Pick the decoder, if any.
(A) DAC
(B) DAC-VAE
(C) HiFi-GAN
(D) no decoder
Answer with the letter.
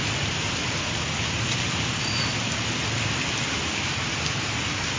D